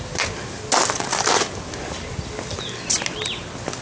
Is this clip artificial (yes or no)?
no